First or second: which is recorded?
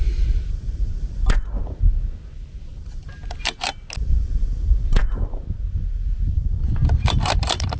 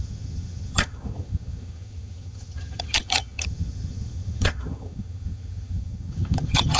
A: first